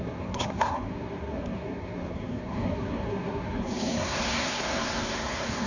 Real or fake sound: fake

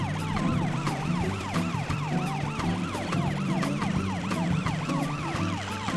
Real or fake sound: fake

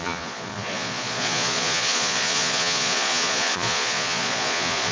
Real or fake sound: fake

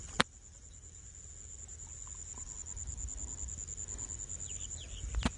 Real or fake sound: real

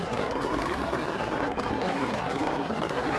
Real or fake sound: fake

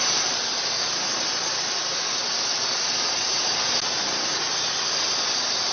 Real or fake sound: real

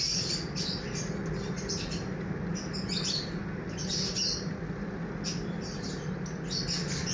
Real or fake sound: real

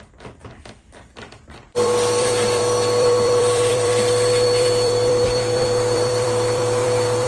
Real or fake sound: fake